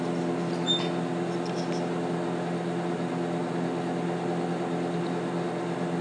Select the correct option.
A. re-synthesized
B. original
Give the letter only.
B